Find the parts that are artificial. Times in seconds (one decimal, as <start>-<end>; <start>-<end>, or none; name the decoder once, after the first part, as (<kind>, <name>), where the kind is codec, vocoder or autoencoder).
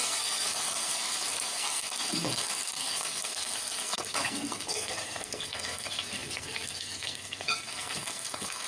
0.0-8.7 (codec, SNAC)